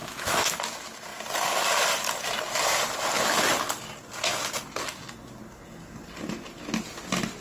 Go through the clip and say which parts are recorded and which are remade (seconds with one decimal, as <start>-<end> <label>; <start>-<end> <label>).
0.0-0.5 remade; 0.5-7.4 recorded